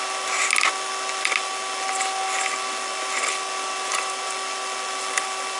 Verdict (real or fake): real